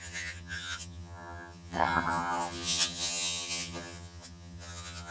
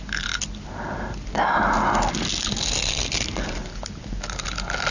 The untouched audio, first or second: second